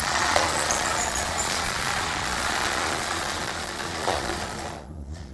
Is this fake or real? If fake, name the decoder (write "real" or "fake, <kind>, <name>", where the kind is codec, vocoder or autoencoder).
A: fake, vocoder, Vocos